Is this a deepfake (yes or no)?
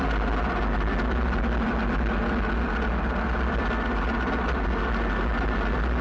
no